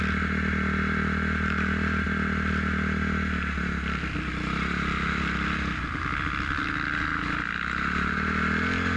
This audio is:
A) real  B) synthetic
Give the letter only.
A